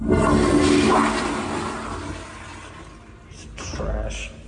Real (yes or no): yes